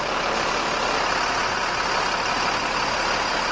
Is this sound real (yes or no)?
yes